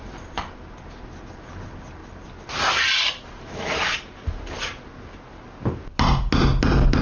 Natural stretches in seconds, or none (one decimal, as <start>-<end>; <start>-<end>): 0.0-7.0